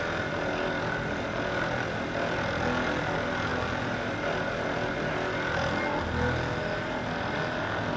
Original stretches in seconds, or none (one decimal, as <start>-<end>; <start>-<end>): 0.0-8.0